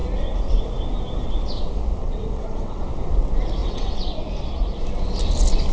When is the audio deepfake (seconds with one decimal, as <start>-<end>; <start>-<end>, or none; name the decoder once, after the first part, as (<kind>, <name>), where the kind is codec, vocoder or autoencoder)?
2.0-2.8 (vocoder, WaveNeXt); 3.6-4.2